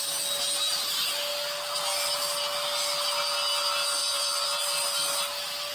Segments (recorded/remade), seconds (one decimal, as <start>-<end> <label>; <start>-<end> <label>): 0.0-4.0 recorded; 4.0-5.1 remade; 5.1-5.7 recorded